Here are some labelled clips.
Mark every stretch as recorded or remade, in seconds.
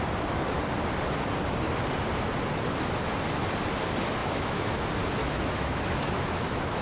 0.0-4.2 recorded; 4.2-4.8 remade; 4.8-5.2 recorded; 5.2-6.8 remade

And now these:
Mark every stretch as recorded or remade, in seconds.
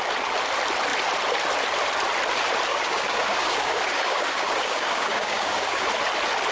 0.0-2.7 recorded; 2.7-5.9 remade; 5.9-6.5 recorded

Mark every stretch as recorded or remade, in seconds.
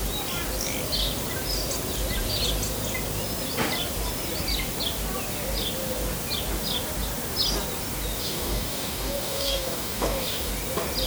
0.0-8.2 recorded; 8.2-10.5 remade; 10.5-11.1 recorded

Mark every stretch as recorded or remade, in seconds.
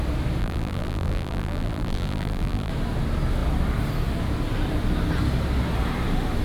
0.0-0.4 recorded; 0.4-2.7 remade; 2.7-6.4 recorded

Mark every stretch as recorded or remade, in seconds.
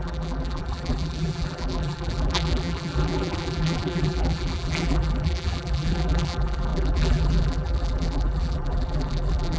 0.0-9.6 remade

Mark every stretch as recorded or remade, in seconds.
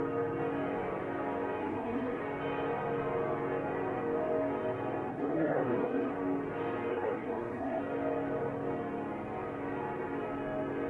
0.0-1.6 recorded; 1.6-2.2 remade; 2.2-5.1 recorded; 5.1-6.1 remade; 6.1-6.9 recorded; 6.9-7.8 remade; 7.8-10.9 recorded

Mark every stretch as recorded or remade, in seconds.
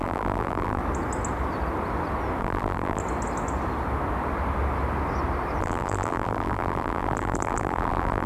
0.0-0.8 remade; 0.8-2.4 recorded; 2.4-3.0 remade; 3.0-5.6 recorded; 5.6-8.3 remade